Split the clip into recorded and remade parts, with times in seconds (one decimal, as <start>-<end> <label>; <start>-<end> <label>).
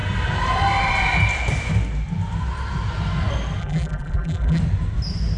0.0-3.6 recorded; 3.6-4.6 remade; 4.6-5.4 recorded